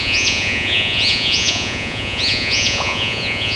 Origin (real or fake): fake